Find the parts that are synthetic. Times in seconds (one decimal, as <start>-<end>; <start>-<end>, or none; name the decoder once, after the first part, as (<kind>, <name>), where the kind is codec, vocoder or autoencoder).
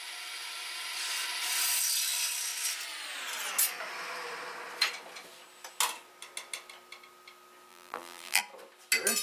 7.7-8.4 (vocoder, BigVGAN v2)